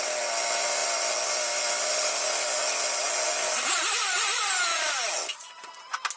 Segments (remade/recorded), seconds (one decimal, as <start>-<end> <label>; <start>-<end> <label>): 0.0-6.2 recorded